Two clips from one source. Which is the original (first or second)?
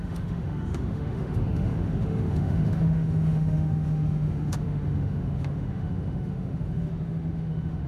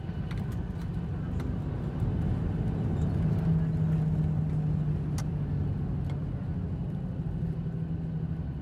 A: second